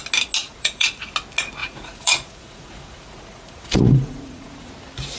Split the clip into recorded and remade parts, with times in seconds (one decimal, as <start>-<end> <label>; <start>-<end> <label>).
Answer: 0.0-0.4 recorded; 0.4-1.0 remade; 1.0-1.6 recorded; 1.6-4.7 remade; 4.7-5.2 recorded